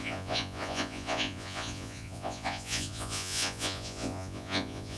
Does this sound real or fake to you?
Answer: fake